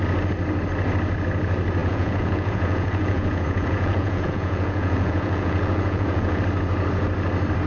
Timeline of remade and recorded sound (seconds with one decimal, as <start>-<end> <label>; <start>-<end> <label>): 0.0-1.8 recorded; 1.8-6.4 remade; 6.4-7.7 recorded